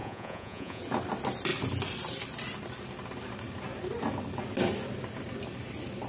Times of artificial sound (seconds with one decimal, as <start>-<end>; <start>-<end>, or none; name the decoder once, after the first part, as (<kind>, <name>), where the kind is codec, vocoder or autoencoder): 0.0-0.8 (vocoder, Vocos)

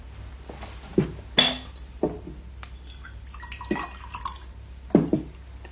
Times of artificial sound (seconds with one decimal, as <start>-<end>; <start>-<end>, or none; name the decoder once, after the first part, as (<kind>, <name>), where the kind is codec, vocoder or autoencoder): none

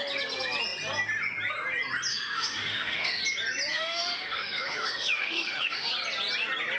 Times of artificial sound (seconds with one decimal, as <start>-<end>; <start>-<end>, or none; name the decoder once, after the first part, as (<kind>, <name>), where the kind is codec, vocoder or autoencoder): 2.1-3.2 (autoencoder, DAC-VAE); 3.7-5.9

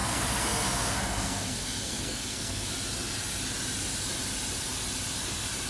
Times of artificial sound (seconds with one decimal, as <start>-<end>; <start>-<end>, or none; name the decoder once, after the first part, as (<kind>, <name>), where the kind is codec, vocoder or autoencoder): 0.0-2.7 (codec, SNAC)